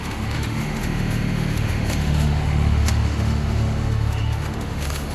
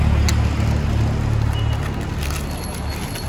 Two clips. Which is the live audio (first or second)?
second